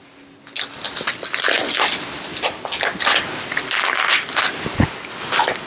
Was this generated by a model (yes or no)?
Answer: no